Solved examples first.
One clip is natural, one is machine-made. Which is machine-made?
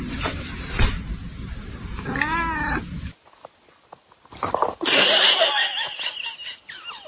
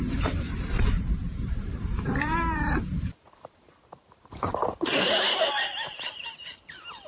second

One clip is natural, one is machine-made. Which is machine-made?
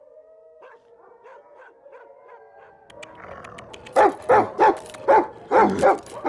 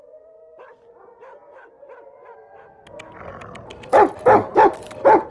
second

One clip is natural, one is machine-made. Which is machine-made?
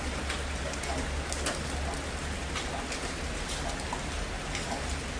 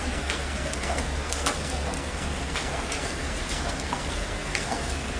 second